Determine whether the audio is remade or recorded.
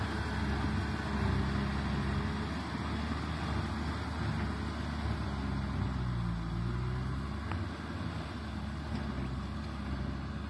recorded